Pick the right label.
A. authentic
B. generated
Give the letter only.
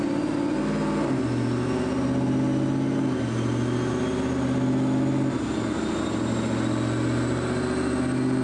A